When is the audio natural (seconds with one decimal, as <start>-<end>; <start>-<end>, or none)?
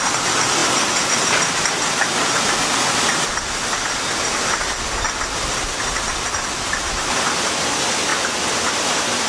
0.0-9.3